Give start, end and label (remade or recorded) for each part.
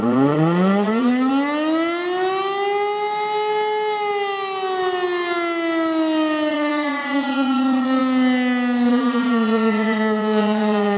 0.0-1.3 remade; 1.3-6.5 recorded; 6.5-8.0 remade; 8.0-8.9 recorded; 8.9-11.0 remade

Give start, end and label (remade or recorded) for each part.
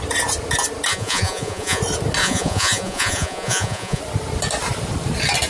0.0-0.9 recorded; 0.9-1.8 remade; 1.8-2.2 recorded; 2.2-4.0 remade; 4.0-5.5 recorded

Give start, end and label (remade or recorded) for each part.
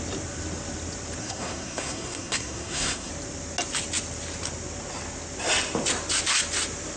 0.0-1.2 recorded; 1.2-3.1 remade; 3.1-7.0 recorded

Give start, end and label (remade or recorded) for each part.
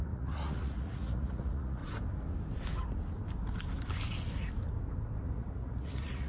0.0-1.8 remade; 1.8-5.2 recorded; 5.2-6.3 remade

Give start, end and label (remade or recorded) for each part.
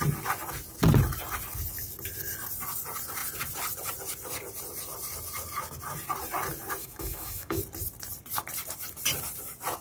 0.0-6.8 recorded; 6.8-7.6 remade; 7.6-9.8 recorded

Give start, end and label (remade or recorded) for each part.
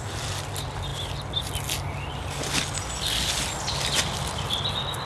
0.0-5.1 recorded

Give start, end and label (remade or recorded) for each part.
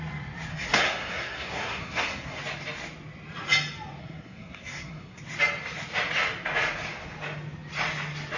0.0-0.5 recorded; 0.5-2.4 remade; 2.4-4.0 recorded; 4.0-5.2 remade; 5.2-8.4 recorded